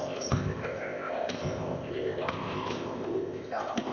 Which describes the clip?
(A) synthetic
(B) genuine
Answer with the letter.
A